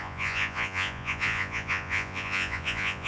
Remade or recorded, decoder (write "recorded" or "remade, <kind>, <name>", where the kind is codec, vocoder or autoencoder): remade, vocoder, Vocos